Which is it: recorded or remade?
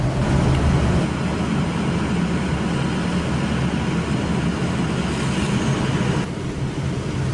recorded